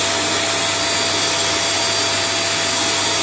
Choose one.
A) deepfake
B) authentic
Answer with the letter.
B